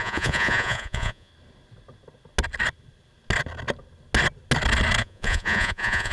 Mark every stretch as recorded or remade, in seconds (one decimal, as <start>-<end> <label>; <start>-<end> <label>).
0.0-1.3 remade; 1.3-5.0 recorded; 5.0-6.1 remade